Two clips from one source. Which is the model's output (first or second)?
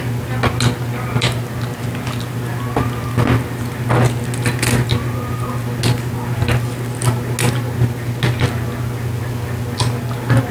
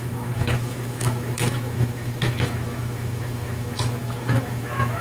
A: second